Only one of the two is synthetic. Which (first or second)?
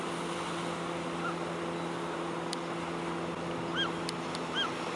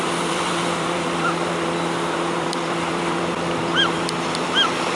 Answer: second